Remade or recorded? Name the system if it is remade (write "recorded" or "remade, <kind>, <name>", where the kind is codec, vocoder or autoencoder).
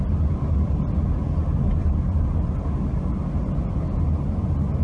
recorded